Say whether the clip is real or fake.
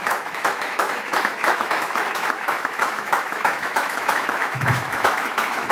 fake